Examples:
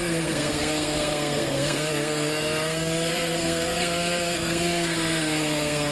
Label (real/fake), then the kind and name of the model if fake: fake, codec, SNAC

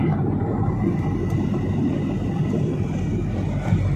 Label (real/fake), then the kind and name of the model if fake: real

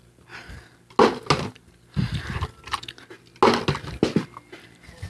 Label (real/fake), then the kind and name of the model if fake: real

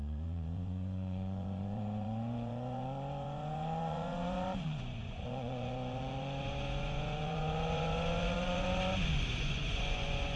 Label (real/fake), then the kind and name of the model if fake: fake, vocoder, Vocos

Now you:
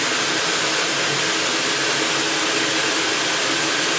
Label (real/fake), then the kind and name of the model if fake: real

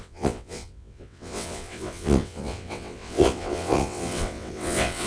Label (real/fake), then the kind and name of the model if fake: fake, vocoder, WaveNeXt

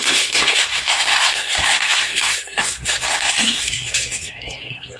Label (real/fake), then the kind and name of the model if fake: fake, codec, SNAC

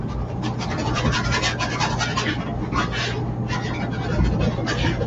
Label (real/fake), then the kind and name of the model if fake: real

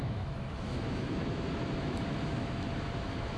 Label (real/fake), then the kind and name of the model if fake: fake, autoencoder, DAC-VAE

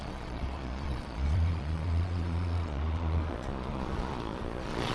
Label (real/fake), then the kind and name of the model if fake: fake, vocoder, Vocos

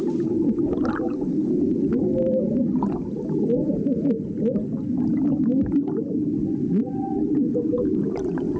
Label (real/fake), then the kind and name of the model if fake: real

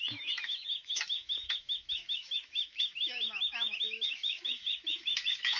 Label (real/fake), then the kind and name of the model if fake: fake, autoencoder, DAC-VAE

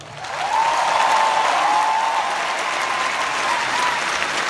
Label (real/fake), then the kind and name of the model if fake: real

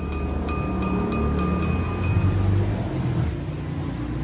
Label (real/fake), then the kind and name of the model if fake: real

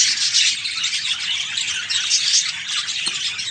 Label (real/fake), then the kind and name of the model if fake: real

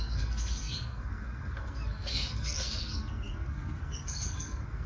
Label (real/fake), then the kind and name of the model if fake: fake, codec, SNAC